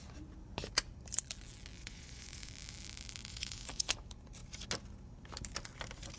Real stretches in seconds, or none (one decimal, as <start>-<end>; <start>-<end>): 0.0-1.8; 2.5-3.3; 3.9-6.2

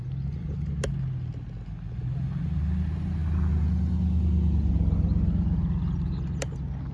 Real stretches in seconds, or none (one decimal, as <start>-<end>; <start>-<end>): 0.0-6.9

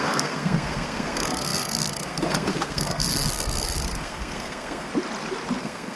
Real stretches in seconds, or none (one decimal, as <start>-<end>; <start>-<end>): 4.9-5.6

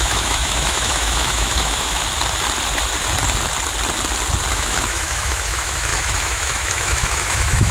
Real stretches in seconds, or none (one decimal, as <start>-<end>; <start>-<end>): 2.0-4.5

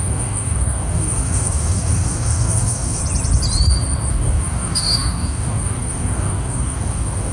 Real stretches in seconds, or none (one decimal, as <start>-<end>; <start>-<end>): 3.0-4.1

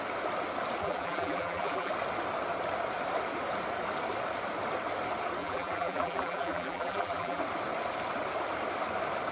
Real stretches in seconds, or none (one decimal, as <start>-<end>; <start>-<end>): 0.0-0.8; 1.9-5.4; 7.4-9.3

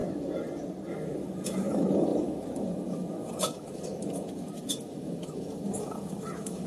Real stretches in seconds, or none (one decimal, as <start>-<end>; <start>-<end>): 0.0-0.9